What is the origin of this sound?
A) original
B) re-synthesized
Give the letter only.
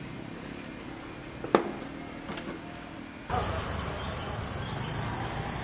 A